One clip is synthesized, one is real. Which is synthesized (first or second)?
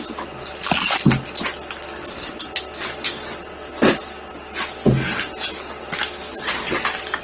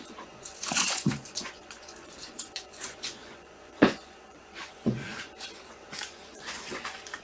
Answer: second